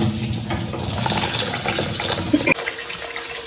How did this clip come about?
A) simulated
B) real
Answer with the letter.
B